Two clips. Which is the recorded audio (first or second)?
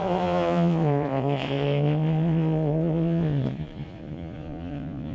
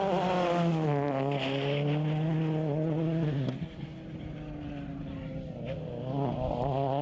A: second